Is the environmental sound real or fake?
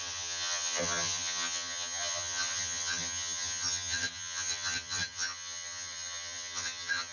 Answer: fake